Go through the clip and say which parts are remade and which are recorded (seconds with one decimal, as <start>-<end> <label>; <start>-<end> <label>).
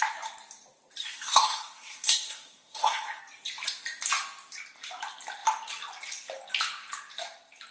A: 0.0-1.0 recorded; 1.0-3.2 remade; 3.2-7.7 recorded